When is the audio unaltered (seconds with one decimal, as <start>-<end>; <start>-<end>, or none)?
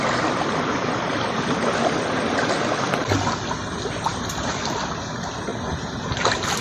5.5-6.6